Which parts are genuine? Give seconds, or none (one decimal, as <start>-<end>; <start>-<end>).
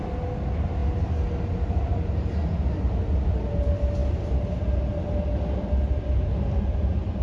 0.0-7.2